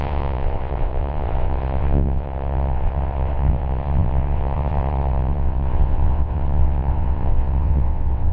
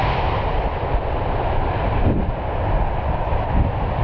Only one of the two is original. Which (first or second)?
second